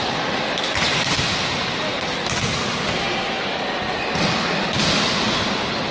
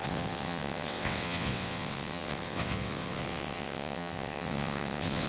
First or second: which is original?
first